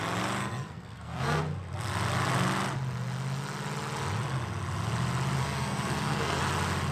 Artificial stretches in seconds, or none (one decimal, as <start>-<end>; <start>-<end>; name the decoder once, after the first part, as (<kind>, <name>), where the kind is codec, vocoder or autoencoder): 0.4-1.4 (codec, SNAC); 5.4-6.4